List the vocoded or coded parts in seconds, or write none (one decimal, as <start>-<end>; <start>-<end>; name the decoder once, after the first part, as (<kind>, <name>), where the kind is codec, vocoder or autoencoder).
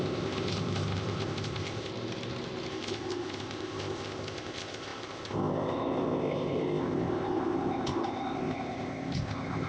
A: 0.0-1.9 (codec, ZipCodec); 2.7-9.7